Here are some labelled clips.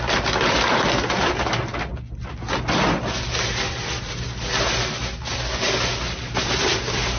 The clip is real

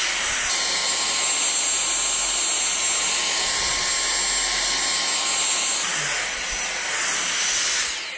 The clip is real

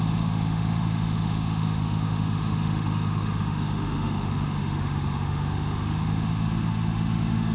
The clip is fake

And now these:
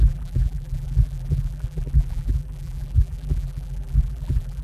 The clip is fake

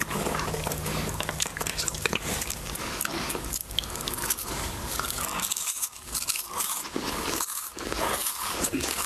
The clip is fake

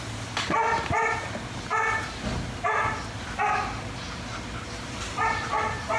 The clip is real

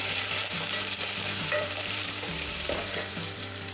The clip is fake